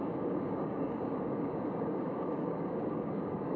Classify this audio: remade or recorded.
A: remade